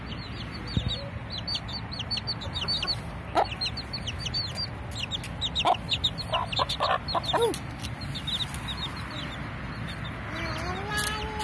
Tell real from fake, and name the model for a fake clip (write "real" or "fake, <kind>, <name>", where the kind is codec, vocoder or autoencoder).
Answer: real